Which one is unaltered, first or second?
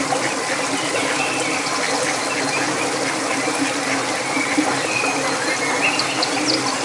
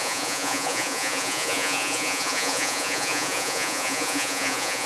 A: first